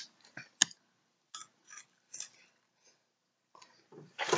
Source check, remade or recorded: recorded